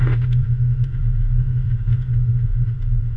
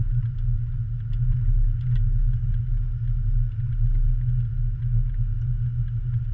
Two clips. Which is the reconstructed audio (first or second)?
first